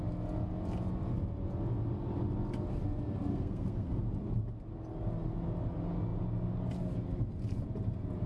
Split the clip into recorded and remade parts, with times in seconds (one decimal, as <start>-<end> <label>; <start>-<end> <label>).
0.0-3.3 recorded; 3.3-4.0 remade; 4.0-8.3 recorded